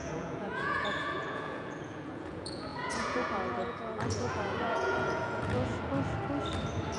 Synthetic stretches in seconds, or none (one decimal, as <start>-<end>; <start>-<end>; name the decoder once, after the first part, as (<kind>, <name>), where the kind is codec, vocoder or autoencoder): 0.0-5.7 (vocoder, Vocos)